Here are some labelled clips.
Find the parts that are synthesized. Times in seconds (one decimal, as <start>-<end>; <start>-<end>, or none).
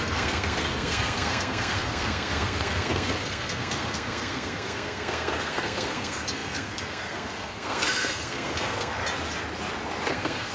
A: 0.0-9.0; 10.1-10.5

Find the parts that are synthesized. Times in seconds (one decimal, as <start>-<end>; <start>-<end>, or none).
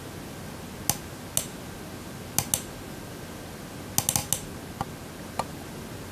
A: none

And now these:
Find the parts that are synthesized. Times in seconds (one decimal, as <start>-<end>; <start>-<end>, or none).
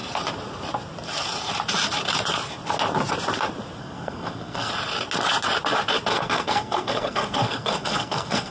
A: 3.8-4.7; 6.1-8.5